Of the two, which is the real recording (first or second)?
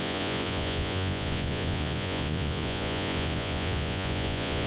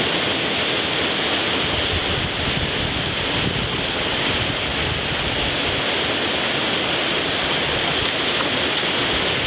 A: second